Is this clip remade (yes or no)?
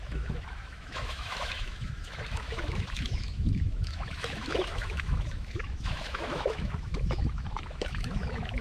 yes